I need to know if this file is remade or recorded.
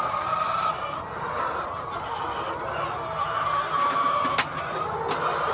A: recorded